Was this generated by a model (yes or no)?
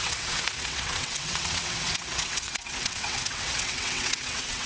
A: yes